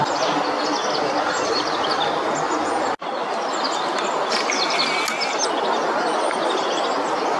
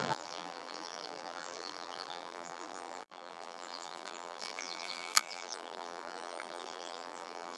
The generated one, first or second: second